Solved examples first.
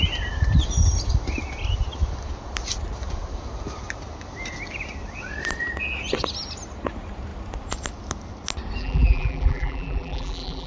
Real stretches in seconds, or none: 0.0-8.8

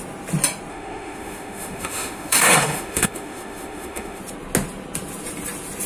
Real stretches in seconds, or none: 0.0-0.7; 4.2-5.9

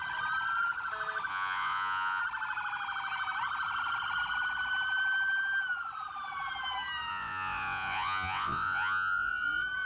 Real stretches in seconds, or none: 0.0-1.3; 2.2-7.1; 9.3-9.9

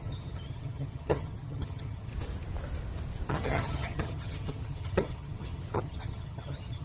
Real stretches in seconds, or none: 2.1-3.3

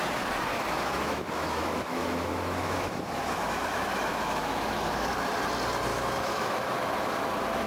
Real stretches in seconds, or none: 0.0-0.5; 5.1-5.9

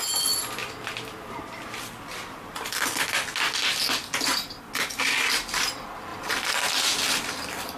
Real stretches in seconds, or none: 0.6-5.3